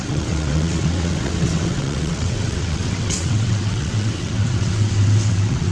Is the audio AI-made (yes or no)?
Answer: yes